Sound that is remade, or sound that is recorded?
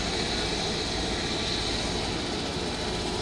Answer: recorded